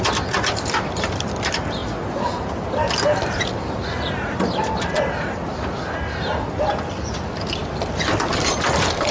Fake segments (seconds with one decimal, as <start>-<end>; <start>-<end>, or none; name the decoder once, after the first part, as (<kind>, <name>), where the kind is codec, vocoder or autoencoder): none